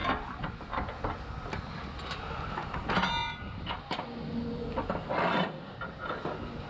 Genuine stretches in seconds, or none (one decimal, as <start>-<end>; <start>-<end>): 0.0-6.7